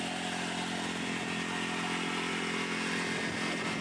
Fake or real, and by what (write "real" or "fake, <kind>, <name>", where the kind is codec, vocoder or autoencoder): real